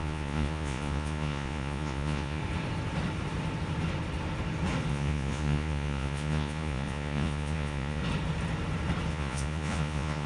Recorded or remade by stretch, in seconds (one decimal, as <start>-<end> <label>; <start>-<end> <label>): 0.0-2.4 remade; 2.4-4.9 recorded; 4.9-8.0 remade; 8.0-9.1 recorded; 9.1-10.3 remade